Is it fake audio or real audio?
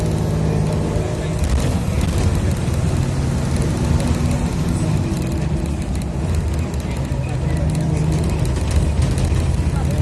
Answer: real